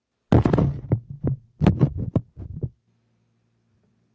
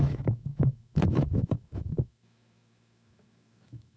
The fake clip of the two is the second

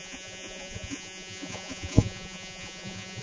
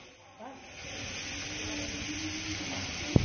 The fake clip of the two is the first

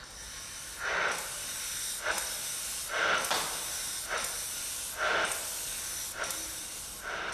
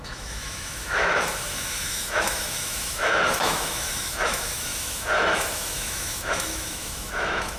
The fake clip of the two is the second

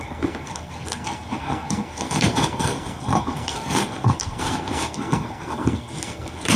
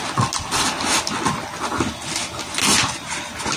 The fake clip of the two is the first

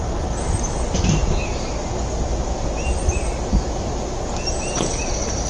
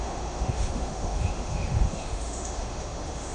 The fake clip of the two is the second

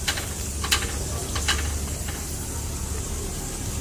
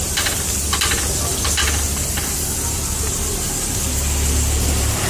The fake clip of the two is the second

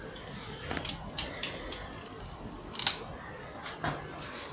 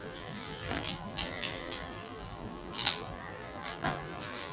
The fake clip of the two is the second